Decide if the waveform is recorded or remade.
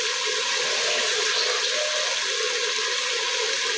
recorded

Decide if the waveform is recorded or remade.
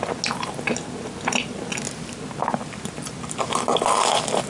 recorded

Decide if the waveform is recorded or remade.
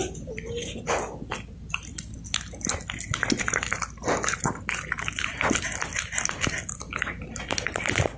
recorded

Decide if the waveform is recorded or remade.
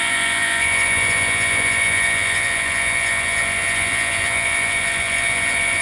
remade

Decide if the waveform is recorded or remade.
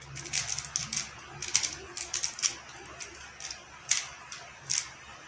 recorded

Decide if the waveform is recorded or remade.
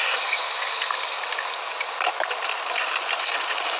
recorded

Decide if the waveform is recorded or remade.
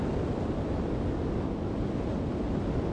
recorded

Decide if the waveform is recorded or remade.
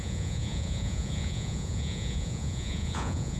remade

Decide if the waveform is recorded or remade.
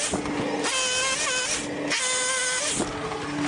recorded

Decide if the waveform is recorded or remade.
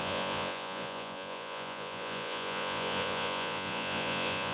remade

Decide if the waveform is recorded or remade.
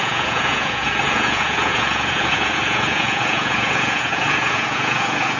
remade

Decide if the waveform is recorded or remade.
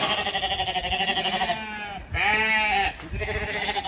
recorded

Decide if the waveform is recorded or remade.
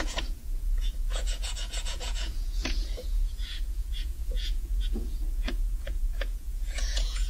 remade